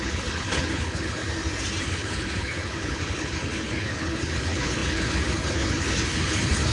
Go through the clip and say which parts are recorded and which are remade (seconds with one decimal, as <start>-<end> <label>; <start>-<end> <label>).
0.0-1.2 remade; 1.2-1.8 recorded; 1.8-6.7 remade